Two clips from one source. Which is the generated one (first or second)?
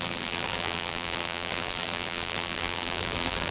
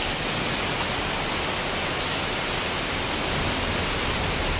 first